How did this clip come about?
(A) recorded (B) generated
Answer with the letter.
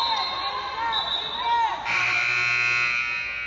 A